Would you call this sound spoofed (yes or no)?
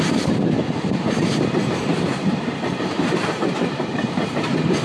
yes